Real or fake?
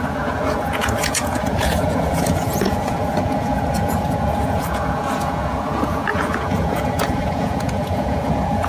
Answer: fake